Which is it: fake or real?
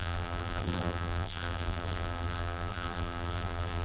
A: fake